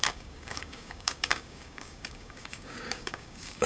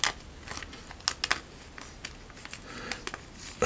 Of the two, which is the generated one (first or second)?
first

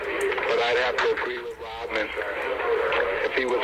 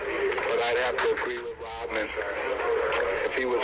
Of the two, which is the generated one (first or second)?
first